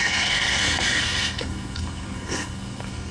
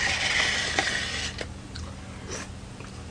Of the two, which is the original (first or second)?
second